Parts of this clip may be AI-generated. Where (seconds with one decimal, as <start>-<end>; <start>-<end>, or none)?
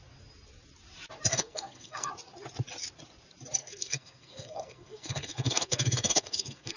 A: 1.3-2.1; 3.6-6.8